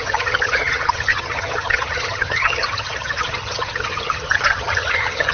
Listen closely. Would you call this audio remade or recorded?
remade